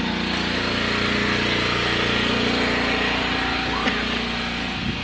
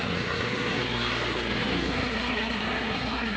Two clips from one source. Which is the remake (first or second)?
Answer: second